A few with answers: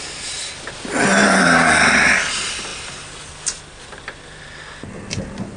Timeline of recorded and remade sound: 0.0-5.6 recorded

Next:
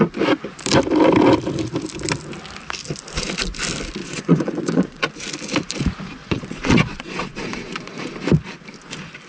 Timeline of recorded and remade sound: 0.0-4.0 recorded; 4.0-5.1 remade; 5.1-6.2 recorded; 6.2-8.1 remade; 8.1-9.3 recorded

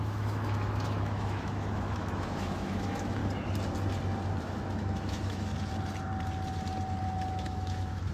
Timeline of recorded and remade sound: 0.0-3.2 remade; 3.2-4.4 recorded; 4.4-5.5 remade; 5.5-7.3 recorded; 7.3-8.1 remade

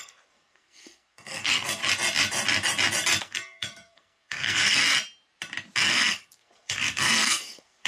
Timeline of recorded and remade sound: 0.0-1.8 remade; 1.8-3.2 recorded; 3.2-4.8 remade; 4.8-5.9 recorded; 5.9-7.9 remade

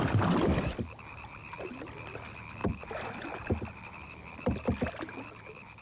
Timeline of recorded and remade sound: 0.0-2.6 recorded; 2.6-5.8 remade

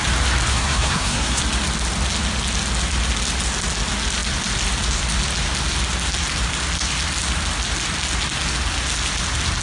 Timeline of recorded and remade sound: 0.0-0.5 recorded; 0.5-1.4 remade; 1.4-9.6 recorded

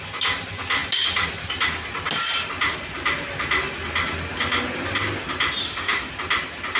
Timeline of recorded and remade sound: 0.0-5.6 recorded; 5.6-6.1 remade; 6.1-6.8 recorded